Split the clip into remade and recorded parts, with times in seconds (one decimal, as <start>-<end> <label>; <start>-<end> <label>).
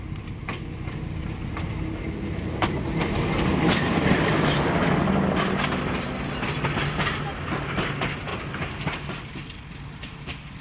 0.0-10.6 recorded